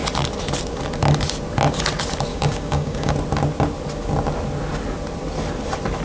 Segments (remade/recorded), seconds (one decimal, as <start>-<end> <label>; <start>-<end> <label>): 0.0-2.3 recorded; 2.3-3.1 remade; 3.1-6.0 recorded